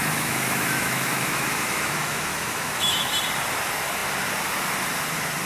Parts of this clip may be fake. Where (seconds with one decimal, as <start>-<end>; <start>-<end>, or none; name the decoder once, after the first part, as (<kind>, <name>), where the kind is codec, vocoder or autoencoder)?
0.0-3.1 (autoencoder, DAC-VAE)